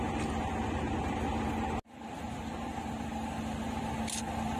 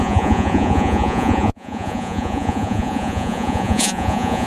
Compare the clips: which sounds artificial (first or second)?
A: second